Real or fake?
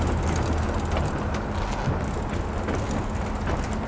real